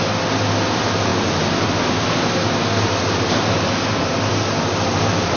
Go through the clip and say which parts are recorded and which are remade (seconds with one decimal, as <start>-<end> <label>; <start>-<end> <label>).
0.0-5.4 recorded